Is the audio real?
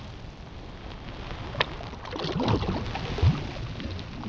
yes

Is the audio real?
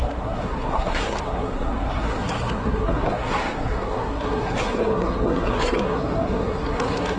no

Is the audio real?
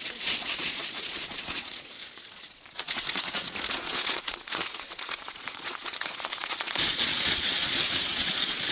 no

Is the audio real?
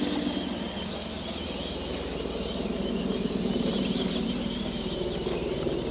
yes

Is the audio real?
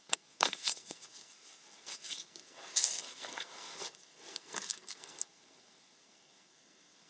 no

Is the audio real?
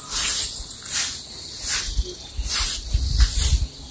yes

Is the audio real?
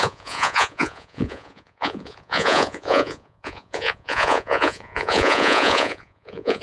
no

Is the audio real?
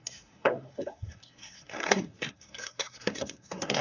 no